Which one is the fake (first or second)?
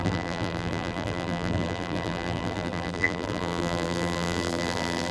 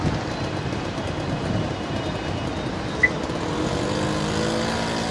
first